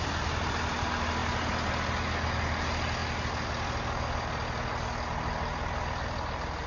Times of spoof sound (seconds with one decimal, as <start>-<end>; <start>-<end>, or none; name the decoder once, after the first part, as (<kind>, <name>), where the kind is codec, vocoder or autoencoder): none